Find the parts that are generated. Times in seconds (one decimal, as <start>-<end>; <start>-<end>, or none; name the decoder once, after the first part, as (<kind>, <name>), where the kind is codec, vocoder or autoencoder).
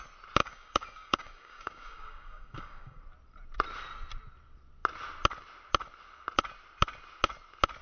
0.4-3.0 (codec, DAC)